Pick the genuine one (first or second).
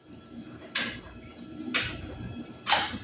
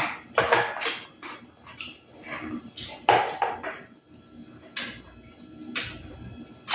second